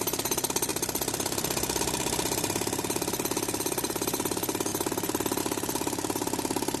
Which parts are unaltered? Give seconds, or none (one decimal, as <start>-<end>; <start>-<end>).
0.0-6.8